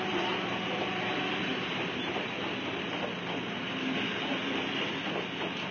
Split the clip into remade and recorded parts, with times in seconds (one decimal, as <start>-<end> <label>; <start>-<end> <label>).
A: 0.0-5.7 recorded

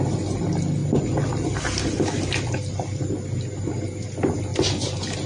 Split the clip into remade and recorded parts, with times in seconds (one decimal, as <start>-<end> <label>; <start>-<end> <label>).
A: 0.0-5.3 recorded

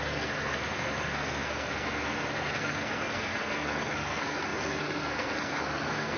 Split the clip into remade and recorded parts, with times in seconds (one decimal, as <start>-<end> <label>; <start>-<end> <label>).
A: 0.0-6.2 remade

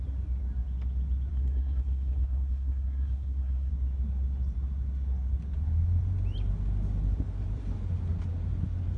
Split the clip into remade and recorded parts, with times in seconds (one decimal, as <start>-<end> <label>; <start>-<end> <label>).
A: 0.0-1.3 recorded; 1.3-3.7 remade; 3.7-9.0 recorded

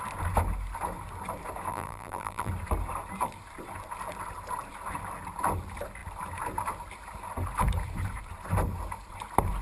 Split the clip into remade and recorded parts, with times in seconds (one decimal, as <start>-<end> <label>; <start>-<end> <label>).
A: 0.0-1.7 recorded; 1.7-2.5 remade; 2.5-9.6 recorded

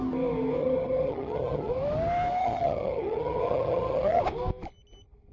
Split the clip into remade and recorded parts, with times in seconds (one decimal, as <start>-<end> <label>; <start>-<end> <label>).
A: 0.0-0.6 recorded; 0.6-1.7 remade; 1.7-2.4 recorded; 2.4-4.2 remade; 4.2-5.3 recorded